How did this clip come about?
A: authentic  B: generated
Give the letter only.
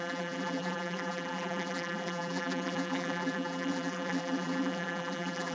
B